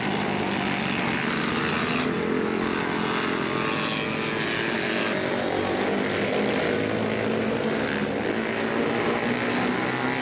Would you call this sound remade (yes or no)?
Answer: no